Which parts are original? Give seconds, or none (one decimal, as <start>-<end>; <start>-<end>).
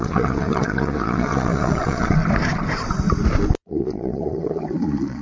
2.2-3.6